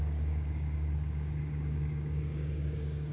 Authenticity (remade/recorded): remade